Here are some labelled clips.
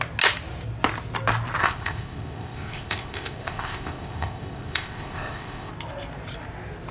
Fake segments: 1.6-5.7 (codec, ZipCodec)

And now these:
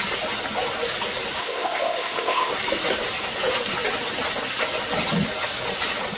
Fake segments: 1.4-2.5 (codec, ZipCodec)